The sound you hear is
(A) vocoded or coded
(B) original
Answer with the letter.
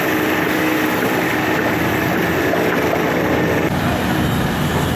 B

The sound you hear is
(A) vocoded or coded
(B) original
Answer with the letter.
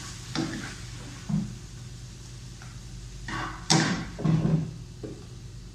B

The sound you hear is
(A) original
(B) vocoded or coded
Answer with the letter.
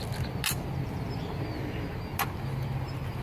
A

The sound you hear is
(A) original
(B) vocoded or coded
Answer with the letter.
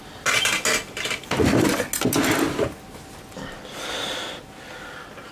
A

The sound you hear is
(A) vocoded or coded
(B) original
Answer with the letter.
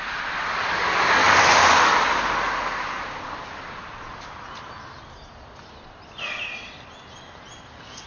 B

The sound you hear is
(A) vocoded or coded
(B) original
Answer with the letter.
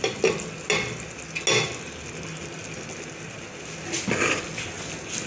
B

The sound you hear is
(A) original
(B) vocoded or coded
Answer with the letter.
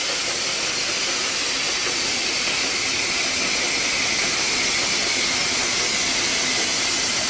A